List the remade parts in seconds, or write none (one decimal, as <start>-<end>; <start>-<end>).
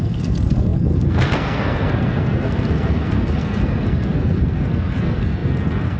0.0-6.0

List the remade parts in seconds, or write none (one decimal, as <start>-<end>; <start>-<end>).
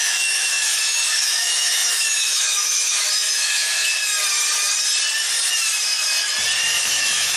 0.0-4.1; 6.8-7.4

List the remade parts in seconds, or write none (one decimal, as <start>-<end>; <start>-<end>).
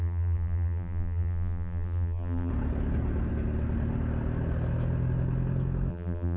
0.0-2.5; 5.9-6.4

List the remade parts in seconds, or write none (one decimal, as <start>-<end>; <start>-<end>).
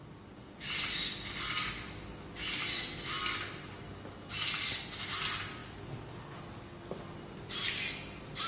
none